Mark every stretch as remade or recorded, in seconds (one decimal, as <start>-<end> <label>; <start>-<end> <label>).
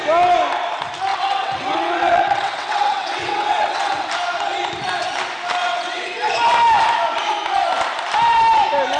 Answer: 0.0-1.1 recorded; 1.1-4.1 remade; 4.1-5.6 recorded; 5.6-6.3 remade; 6.3-9.0 recorded